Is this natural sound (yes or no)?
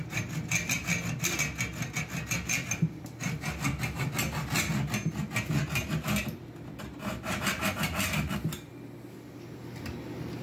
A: yes